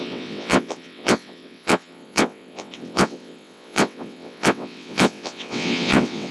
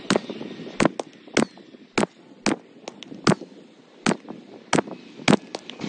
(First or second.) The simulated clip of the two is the first